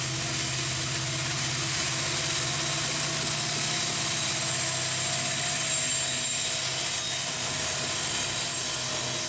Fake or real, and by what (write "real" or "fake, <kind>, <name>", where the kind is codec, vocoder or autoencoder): real